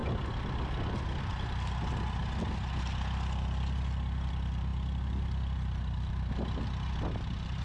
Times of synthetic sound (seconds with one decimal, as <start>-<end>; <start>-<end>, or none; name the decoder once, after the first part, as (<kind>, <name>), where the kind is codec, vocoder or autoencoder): none